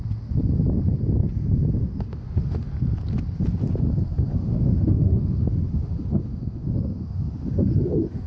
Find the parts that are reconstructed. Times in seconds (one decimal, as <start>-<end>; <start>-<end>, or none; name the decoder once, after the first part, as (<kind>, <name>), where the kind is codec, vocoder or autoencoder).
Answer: 1.8-2.7 (autoencoder, DAC-VAE); 4.3-8.3